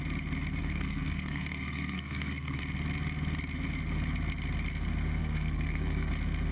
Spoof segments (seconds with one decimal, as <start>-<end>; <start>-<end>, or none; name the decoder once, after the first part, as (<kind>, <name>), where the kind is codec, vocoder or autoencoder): 0.6-2.6 (codec, SNAC); 5.2-6.1